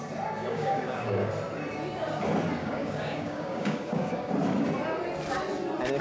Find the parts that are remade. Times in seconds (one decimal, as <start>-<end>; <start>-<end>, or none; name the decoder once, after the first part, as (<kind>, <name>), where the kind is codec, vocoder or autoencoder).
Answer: 0.4-1.3 (codec, DAC); 2.6-4.3